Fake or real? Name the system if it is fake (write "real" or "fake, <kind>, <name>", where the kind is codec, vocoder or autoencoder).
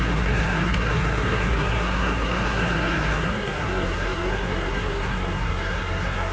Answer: fake, codec, SNAC